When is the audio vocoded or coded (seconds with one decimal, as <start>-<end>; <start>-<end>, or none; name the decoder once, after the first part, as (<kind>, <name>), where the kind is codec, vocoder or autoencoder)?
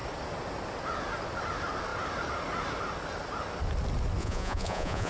4.2-5.1 (vocoder, Vocos)